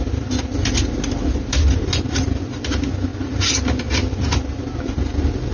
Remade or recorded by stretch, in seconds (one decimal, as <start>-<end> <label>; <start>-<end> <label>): 0.0-5.5 recorded